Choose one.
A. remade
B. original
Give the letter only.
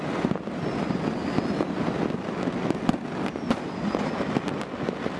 B